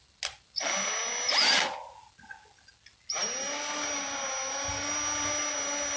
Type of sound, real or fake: real